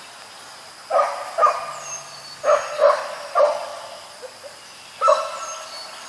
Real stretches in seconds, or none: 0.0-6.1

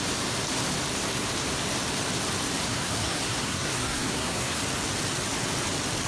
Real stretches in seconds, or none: 0.0-2.6; 4.6-6.1

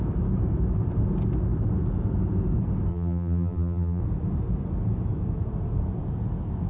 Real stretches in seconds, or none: 0.0-2.9; 4.0-6.7

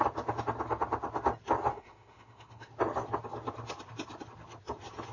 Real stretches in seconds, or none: 0.0-1.7; 2.7-5.1

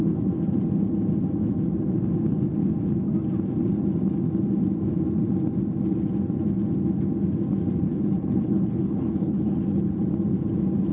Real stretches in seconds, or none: 0.0-7.9; 10.0-10.9

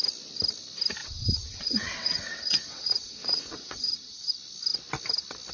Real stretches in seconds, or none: 0.0-1.0; 4.3-5.5

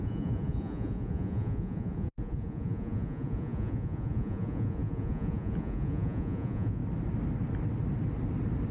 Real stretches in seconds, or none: 6.8-8.7

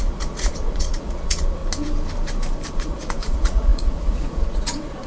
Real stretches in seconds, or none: 1.6-2.7